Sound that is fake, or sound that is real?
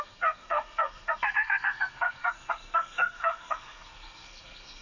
fake